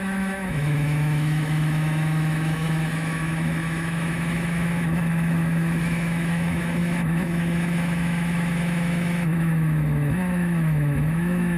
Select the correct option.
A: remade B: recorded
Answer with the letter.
A